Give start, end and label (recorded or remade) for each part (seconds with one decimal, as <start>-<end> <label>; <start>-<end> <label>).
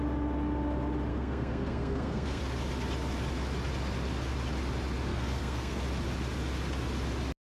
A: 0.0-1.1 recorded; 1.1-2.4 remade; 2.4-5.1 recorded; 5.1-5.8 remade; 5.8-7.5 recorded